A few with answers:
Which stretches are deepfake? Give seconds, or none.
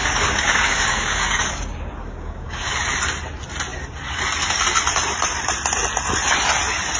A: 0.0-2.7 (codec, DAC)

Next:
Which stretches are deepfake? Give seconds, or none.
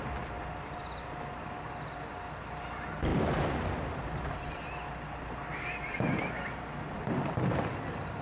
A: none